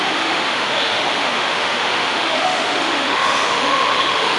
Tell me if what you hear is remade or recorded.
remade